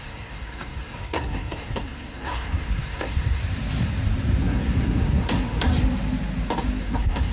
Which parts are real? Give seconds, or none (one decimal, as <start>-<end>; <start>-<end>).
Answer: 3.4-4.4; 5.7-6.8